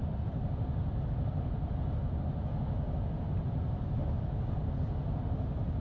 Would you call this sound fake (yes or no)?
no